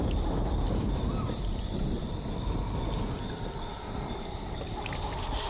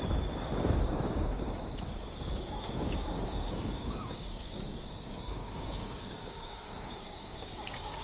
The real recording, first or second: first